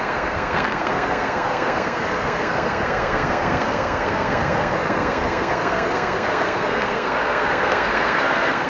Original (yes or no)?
no